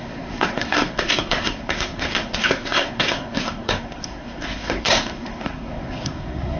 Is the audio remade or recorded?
remade